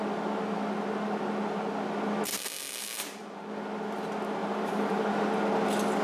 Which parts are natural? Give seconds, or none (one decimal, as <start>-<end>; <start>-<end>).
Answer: 0.0-3.0; 3.5-4.4; 5.0-6.0